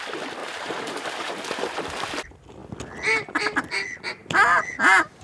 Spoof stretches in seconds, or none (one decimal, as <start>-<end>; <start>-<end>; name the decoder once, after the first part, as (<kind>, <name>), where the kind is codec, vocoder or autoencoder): 0.4-1.4 (vocoder, BigVGAN v2)